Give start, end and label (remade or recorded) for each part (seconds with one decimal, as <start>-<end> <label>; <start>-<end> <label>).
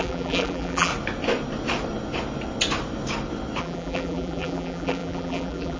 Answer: 0.0-0.9 remade; 0.9-3.6 recorded; 3.6-5.8 remade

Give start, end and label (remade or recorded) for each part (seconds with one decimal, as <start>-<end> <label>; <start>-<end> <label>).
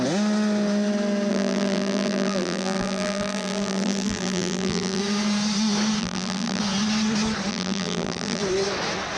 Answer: 0.0-1.3 recorded; 1.3-5.0 remade; 5.0-6.0 recorded; 6.0-6.6 remade; 6.6-7.5 recorded; 7.5-8.4 remade; 8.4-9.2 recorded